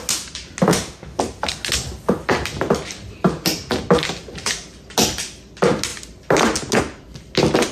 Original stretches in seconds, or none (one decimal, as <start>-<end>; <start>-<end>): 0.0-0.7; 1.2-7.7